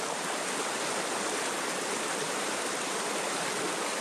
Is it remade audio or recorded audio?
recorded